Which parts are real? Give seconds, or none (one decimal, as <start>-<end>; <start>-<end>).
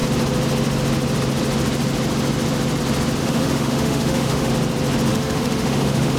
0.0-3.2; 4.5-5.1